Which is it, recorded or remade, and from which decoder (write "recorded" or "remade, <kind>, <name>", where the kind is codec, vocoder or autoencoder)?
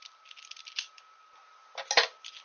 recorded